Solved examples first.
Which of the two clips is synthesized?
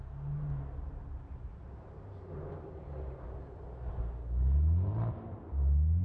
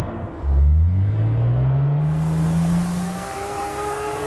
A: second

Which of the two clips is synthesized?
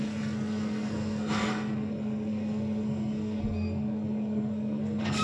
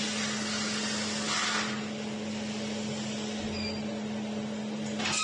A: first